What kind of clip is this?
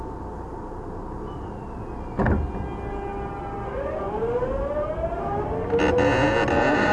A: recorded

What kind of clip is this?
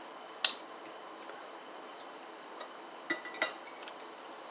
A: recorded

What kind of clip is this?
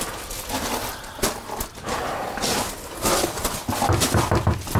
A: recorded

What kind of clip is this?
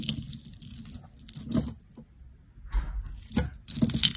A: recorded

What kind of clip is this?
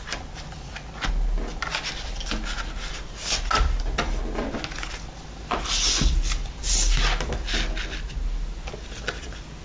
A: recorded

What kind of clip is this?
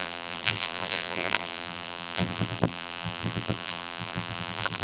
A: remade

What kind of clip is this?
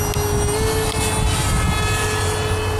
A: recorded